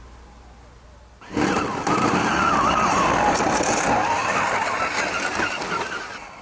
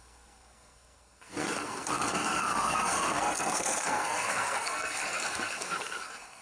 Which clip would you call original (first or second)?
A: first